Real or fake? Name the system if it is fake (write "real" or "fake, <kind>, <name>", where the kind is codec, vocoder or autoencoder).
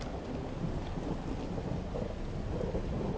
real